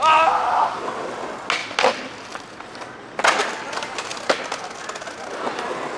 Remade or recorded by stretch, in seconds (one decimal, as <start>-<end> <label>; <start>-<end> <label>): 0.0-6.0 recorded